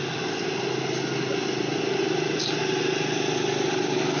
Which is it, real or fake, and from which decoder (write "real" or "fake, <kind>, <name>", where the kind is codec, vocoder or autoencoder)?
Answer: real